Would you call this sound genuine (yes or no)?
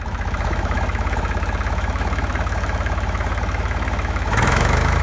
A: no